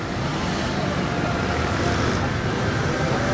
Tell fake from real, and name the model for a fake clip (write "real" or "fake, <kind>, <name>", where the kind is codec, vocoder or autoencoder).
real